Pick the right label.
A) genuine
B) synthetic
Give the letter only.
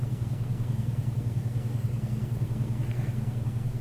B